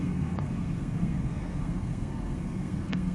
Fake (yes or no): yes